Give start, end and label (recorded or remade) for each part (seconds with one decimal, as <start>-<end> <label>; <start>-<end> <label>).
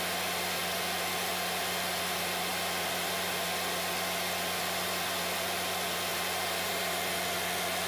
0.0-6.1 recorded; 6.1-7.0 remade; 7.0-7.9 recorded